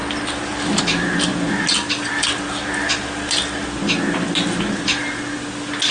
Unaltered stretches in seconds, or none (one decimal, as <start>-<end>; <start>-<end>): 0.8-5.9